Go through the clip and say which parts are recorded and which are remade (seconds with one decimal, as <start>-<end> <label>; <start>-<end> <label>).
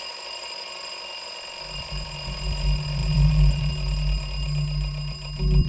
0.0-3.0 recorded; 3.0-3.7 remade; 3.7-5.7 recorded